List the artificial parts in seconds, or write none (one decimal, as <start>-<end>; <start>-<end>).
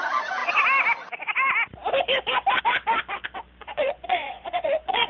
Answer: 3.6-5.1